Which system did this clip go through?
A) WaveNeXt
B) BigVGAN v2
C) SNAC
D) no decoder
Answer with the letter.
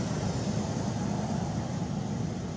D